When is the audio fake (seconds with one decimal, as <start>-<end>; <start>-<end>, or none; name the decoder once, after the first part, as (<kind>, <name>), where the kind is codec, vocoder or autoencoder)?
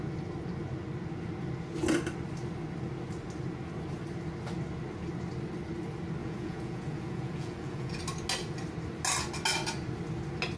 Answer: 6.2-8.0 (vocoder, Vocos)